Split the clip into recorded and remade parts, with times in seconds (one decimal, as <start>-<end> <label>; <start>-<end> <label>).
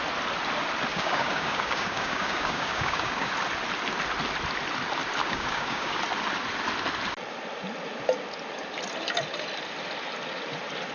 0.0-0.9 recorded; 0.9-3.3 remade; 3.3-5.2 recorded; 5.2-6.0 remade; 6.0-10.9 recorded